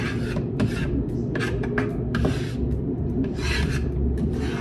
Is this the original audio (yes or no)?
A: yes